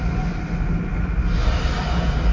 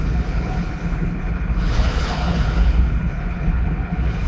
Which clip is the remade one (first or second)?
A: second